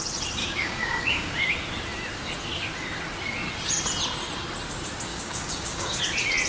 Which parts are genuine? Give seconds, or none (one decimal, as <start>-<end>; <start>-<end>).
0.0-0.4; 1.4-5.1; 6.0-6.5